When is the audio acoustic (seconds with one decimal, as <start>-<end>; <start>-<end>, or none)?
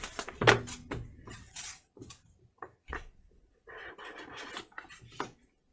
0.0-1.1; 1.9-2.8; 3.9-5.7